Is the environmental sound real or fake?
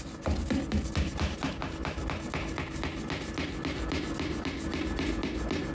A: real